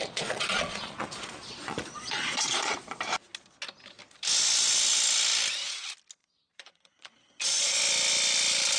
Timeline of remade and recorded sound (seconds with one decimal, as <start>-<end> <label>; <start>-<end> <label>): 0.0-3.0 remade; 3.0-6.2 recorded; 6.2-7.8 remade; 7.8-8.8 recorded